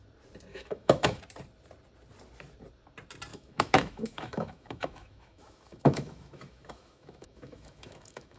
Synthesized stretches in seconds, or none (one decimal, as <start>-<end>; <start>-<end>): 0.5-1.2; 3.3-8.4